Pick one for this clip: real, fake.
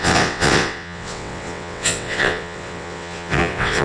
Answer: fake